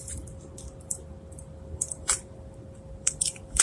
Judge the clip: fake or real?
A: fake